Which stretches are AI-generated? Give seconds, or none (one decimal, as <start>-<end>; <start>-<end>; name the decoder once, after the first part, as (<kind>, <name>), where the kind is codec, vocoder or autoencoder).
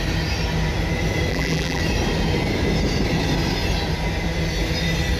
1.3-1.8 (vocoder, BigVGAN v2)